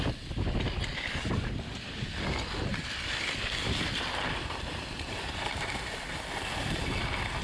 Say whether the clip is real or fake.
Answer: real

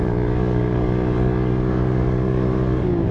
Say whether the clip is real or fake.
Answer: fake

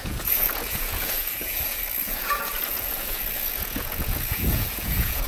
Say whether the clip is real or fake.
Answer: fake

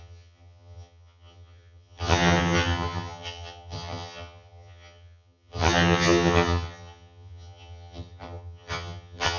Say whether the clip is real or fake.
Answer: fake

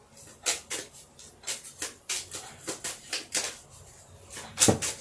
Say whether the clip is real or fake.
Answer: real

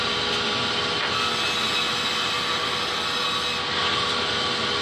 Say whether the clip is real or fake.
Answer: real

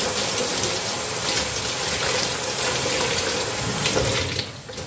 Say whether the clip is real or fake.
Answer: real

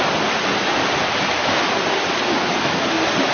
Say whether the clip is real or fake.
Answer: real